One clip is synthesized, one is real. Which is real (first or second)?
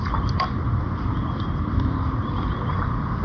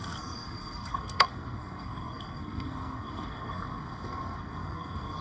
first